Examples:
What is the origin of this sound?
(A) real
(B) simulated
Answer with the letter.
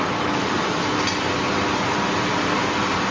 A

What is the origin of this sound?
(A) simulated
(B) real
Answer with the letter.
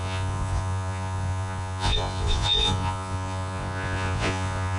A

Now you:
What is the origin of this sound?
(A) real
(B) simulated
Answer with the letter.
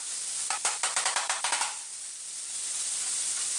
A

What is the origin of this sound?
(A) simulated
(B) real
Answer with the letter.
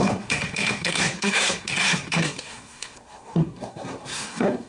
A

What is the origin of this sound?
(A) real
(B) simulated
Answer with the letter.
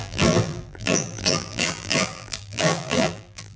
B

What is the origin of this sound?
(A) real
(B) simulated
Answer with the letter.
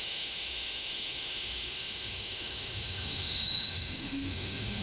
B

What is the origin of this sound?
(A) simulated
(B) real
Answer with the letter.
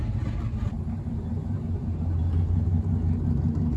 A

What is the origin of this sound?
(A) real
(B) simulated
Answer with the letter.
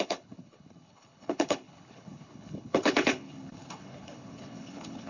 B